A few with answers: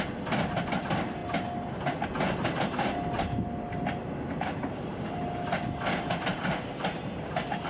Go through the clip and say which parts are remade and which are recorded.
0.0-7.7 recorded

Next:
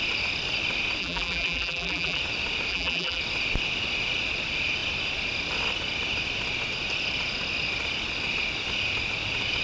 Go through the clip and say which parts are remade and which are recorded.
0.0-1.0 recorded; 1.0-2.2 remade; 2.2-2.7 recorded; 2.7-3.2 remade; 3.2-9.6 recorded

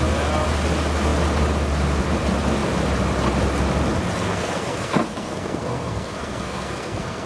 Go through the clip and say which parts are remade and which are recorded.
0.0-4.2 recorded; 4.2-7.3 remade

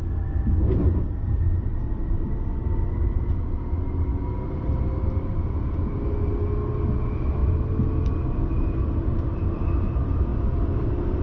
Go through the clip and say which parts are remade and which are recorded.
0.0-10.3 recorded; 10.3-11.2 remade

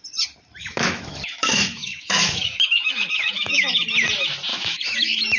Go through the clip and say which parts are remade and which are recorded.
0.0-0.6 recorded; 0.6-3.8 remade; 3.8-4.5 recorded; 4.5-5.4 remade

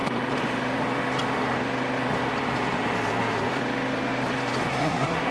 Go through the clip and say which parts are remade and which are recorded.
0.0-4.7 recorded; 4.7-5.3 remade

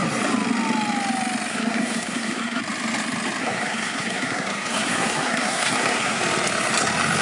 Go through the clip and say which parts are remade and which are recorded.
0.0-1.5 recorded; 1.5-2.6 remade; 2.6-3.4 recorded; 3.4-6.2 remade; 6.2-7.2 recorded